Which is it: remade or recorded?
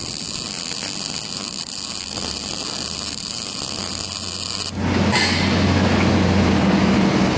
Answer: recorded